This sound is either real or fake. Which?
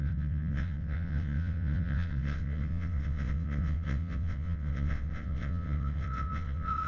fake